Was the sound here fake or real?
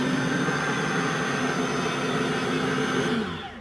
real